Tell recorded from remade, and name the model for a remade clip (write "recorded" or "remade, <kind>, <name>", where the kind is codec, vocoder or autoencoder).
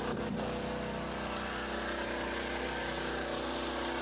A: recorded